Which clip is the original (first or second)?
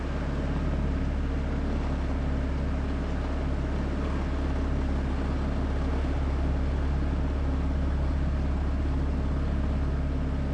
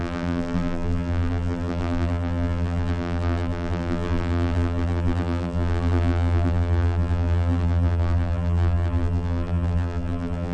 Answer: first